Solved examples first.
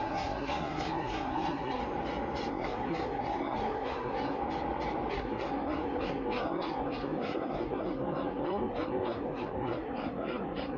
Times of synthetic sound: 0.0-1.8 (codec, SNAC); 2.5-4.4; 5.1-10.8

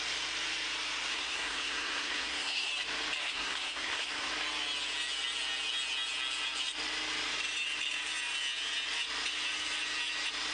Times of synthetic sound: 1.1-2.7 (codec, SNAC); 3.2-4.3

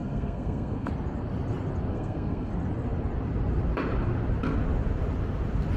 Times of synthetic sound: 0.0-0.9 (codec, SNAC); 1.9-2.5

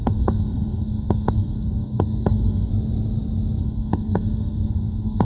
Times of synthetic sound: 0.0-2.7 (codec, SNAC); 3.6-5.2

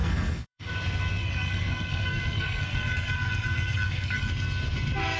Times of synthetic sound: 0.0-0.7 (codec, SNAC); 1.2-4.3

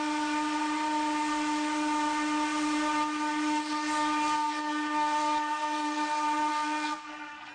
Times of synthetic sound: 6.5-7.5 (codec, SNAC)